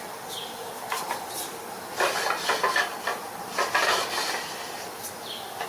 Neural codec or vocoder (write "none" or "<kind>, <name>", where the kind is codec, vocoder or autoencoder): none